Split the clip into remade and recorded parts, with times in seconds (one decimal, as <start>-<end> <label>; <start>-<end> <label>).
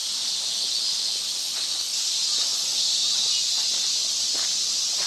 0.0-5.1 recorded